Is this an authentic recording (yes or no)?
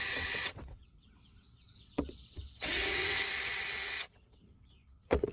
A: no